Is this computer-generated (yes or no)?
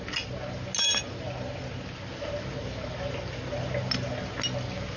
no